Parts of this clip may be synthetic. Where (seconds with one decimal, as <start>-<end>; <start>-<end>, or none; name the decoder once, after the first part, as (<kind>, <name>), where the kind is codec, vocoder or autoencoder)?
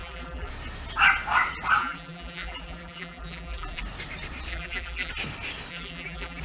0.0-0.5 (vocoder, BigVGAN v2); 1.8-3.8; 4.5-5.1; 5.7-6.4